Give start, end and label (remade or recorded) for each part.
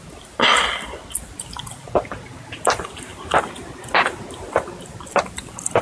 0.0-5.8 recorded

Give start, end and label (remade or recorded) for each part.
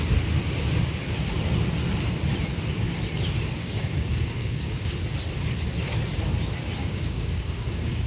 0.0-3.6 recorded; 3.6-4.9 remade; 4.9-6.8 recorded; 6.8-8.1 remade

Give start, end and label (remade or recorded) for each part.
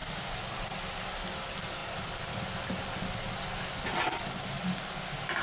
0.0-5.4 recorded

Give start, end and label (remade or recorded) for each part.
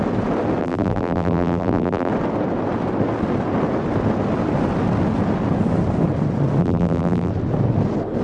0.0-0.6 recorded; 0.6-2.1 remade; 2.1-6.6 recorded; 6.6-7.3 remade; 7.3-8.2 recorded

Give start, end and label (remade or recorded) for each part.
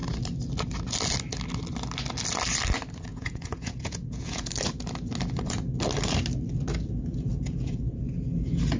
0.0-3.1 recorded; 3.1-4.5 remade; 4.5-7.3 recorded; 7.3-8.0 remade; 8.0-8.8 recorded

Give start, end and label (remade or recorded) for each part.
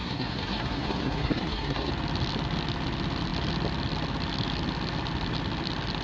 0.0-1.9 remade; 1.9-6.0 recorded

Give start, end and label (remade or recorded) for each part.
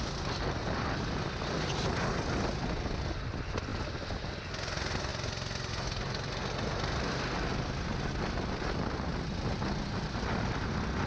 0.0-11.1 recorded